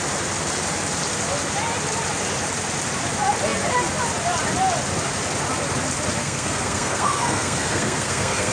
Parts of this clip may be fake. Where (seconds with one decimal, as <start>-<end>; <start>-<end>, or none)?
6.2-8.5